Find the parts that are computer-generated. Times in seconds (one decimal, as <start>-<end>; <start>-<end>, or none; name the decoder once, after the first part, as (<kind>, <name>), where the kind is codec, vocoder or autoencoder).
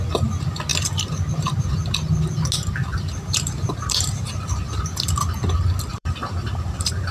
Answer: 2.9-4.8 (vocoder, BigVGAN v2); 5.9-7.1